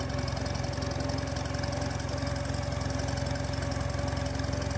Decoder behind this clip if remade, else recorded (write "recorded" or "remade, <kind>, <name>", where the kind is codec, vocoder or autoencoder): recorded